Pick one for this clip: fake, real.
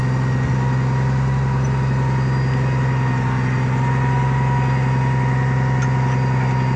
real